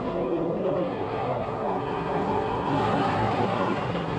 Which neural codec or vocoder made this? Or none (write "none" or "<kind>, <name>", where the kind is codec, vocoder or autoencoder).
codec, SNAC